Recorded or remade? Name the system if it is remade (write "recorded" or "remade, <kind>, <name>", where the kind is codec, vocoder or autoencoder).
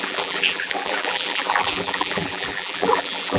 remade, vocoder, BigVGAN v2